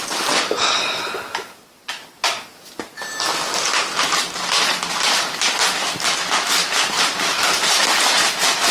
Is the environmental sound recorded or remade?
recorded